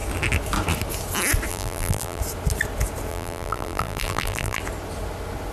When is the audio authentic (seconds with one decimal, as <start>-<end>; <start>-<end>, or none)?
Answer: 0.0-1.5; 2.2-3.1; 4.6-5.5